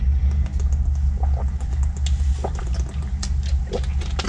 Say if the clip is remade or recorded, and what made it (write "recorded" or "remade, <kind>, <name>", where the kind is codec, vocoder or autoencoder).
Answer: recorded